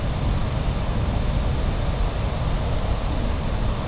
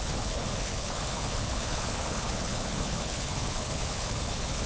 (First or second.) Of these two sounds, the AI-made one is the second